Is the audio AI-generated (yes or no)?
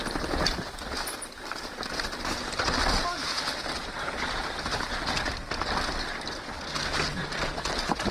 no